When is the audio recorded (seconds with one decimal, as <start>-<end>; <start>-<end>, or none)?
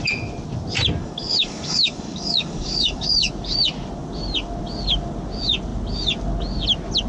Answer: 0.0-1.0; 3.3-7.1